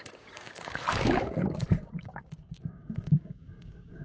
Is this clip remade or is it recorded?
remade